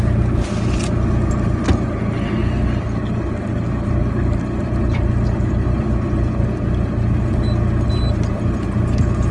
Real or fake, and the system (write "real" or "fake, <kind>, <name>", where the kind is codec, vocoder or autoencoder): real